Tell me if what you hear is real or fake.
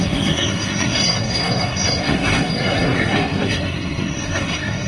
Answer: fake